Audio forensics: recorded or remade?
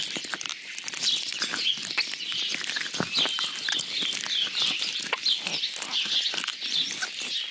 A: recorded